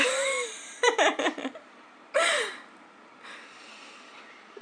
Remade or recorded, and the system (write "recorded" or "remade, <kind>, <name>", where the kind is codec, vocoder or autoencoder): remade, vocoder, BigVGAN v2